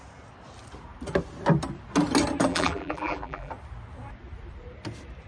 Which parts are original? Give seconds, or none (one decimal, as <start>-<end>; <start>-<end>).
0.0-2.5; 3.5-5.3